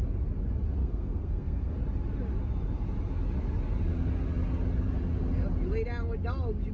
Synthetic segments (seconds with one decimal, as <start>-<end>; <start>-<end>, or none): 0.8-1.7